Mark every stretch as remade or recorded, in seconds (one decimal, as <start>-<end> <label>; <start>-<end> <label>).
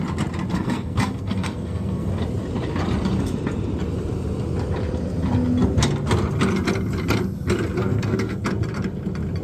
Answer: 0.0-0.5 recorded; 0.5-2.1 remade; 2.1-7.8 recorded; 7.8-8.4 remade; 8.4-9.4 recorded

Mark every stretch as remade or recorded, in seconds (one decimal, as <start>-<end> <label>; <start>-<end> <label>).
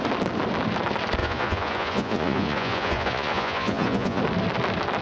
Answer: 0.0-1.2 recorded; 1.2-4.2 remade; 4.2-5.0 recorded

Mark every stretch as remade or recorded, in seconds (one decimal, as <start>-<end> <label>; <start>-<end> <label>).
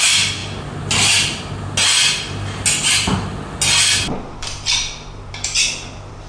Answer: 0.0-0.4 remade; 0.4-4.2 recorded; 4.2-6.3 remade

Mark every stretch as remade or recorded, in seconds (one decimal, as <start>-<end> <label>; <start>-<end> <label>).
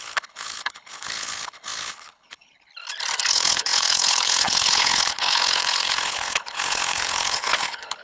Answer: 0.0-2.7 remade; 2.7-3.3 recorded; 3.3-8.0 remade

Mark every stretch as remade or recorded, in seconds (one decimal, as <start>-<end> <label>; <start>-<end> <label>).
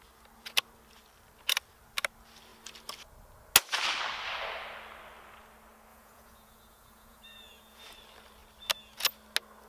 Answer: 0.0-5.9 recorded; 5.9-7.8 remade; 7.8-9.7 recorded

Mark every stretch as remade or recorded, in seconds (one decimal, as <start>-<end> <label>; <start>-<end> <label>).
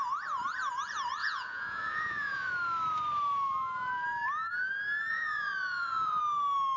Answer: 0.0-1.2 recorded; 1.2-2.5 remade; 2.5-5.1 recorded; 5.1-6.2 remade; 6.2-6.8 recorded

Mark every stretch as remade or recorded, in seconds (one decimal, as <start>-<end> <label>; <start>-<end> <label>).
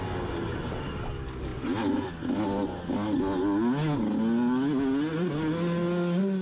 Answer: 0.0-6.4 recorded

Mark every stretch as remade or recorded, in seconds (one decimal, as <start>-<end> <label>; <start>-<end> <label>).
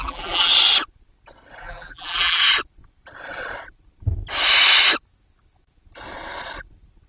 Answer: 0.0-0.5 remade; 0.5-1.6 recorded; 1.6-2.4 remade; 2.4-7.1 recorded